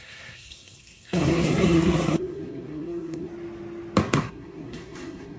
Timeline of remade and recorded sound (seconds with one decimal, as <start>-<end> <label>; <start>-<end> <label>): 0.0-3.3 remade; 3.3-4.0 recorded; 4.0-5.4 remade